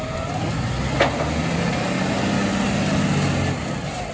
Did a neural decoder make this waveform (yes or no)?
no